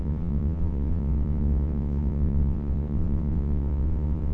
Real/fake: fake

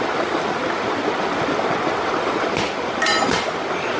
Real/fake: real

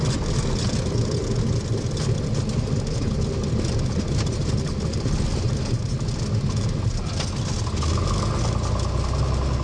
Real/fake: real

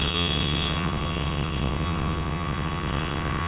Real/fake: fake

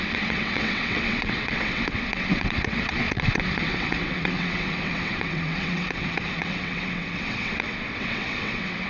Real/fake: fake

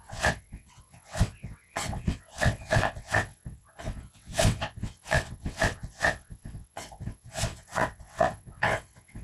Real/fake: fake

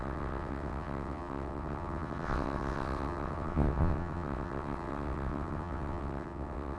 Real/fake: fake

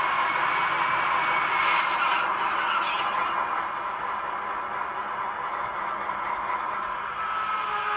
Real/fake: real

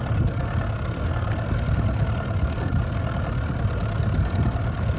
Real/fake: real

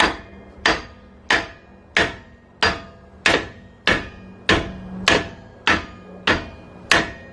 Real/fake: real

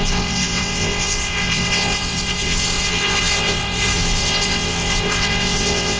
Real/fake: fake